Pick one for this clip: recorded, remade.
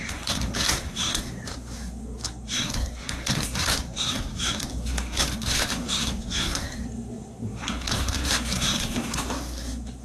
remade